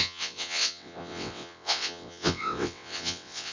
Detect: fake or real fake